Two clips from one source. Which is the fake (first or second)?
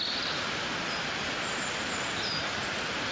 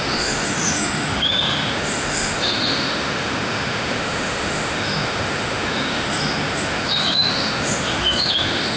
second